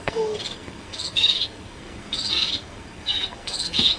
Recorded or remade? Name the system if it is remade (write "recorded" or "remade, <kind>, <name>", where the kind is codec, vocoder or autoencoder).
remade, codec, SNAC